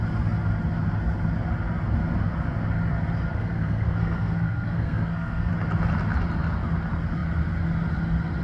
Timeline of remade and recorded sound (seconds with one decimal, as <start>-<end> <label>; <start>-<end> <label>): 0.0-3.3 recorded; 3.3-5.5 remade; 5.5-8.4 recorded